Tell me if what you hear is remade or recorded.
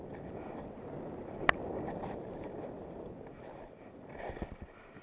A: recorded